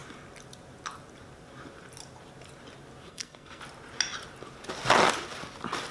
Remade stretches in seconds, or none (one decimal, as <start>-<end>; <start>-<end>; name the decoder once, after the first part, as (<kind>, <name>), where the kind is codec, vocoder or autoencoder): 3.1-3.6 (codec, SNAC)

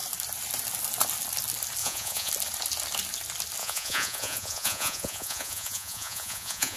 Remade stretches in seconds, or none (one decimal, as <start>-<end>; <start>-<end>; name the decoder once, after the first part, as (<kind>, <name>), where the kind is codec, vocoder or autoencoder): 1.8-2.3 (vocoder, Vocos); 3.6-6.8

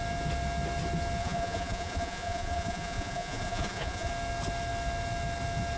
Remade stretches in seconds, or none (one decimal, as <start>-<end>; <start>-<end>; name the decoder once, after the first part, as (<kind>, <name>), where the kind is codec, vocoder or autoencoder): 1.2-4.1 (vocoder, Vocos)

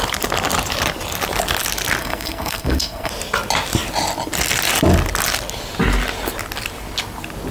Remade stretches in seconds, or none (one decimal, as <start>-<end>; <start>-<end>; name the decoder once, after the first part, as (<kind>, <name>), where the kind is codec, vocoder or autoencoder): 2.0-3.1 (codec, SNAC)

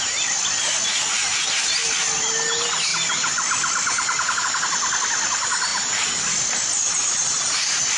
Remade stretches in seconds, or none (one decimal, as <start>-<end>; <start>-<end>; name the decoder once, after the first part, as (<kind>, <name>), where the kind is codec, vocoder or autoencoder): none